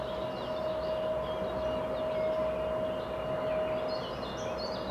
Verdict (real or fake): real